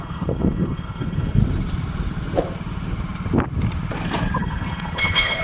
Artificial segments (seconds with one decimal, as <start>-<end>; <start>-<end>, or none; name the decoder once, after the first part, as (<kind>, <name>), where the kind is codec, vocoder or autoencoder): 0.0-1.4 (codec, HILCodec); 4.4-5.4